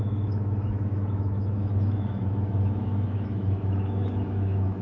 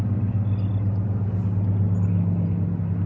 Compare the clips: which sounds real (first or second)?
second